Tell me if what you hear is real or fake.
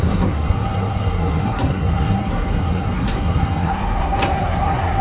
fake